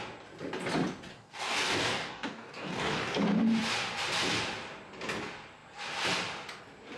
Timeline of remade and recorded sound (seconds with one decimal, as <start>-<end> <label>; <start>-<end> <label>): 0.0-1.1 recorded; 1.1-3.2 remade; 3.2-7.0 recorded